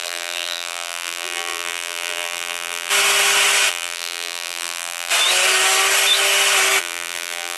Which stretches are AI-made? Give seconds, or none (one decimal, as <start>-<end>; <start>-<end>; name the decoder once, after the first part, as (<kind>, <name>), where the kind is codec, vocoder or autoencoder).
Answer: 0.0-2.9 (vocoder, BigVGAN v2); 3.7-5.1; 6.8-7.6